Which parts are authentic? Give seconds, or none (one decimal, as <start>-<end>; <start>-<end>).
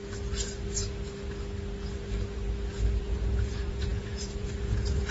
0.0-3.0